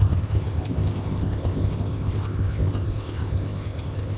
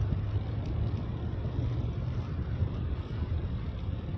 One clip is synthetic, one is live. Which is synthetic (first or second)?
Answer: first